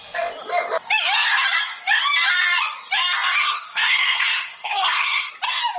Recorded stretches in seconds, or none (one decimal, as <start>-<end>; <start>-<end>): 0.0-3.4; 5.3-5.8